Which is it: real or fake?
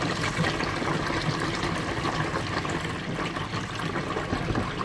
real